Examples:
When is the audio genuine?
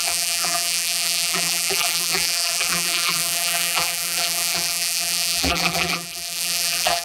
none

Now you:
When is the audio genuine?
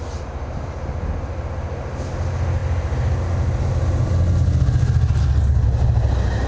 0.0-6.5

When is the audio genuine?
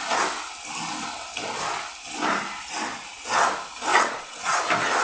0.0-3.9; 4.6-5.0